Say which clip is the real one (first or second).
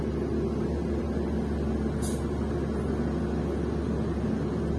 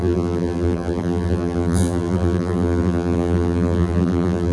first